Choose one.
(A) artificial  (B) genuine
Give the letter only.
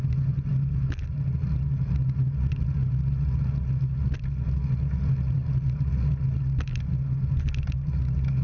B